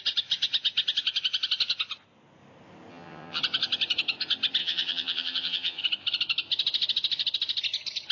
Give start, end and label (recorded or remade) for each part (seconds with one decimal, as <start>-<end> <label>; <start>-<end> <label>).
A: 0.0-2.9 recorded; 2.9-3.4 remade; 3.4-4.6 recorded; 4.6-5.8 remade; 5.8-8.1 recorded